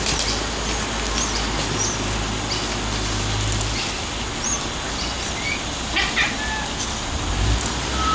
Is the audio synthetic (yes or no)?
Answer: no